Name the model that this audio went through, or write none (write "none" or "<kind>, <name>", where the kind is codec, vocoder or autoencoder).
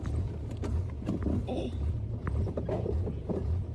none